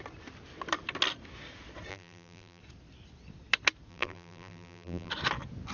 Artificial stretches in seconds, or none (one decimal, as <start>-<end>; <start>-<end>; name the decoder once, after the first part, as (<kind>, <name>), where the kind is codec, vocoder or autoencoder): 1.9-2.6 (vocoder, BigVGAN v2); 3.9-5.1